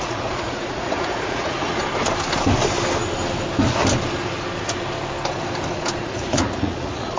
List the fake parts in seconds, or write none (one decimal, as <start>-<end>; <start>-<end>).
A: 0.0-1.8; 6.0-7.2